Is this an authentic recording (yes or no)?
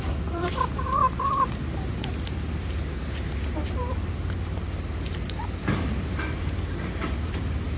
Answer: no